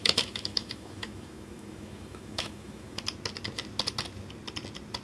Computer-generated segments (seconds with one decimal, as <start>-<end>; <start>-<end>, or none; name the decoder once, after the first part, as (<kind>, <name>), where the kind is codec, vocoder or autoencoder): 0.0-3.0 (autoencoder, DAC-VAE)